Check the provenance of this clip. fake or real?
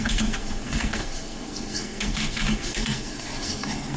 fake